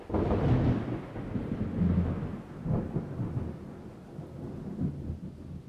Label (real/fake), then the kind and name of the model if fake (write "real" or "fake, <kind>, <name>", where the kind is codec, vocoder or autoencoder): real